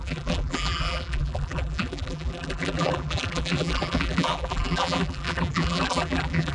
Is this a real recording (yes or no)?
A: no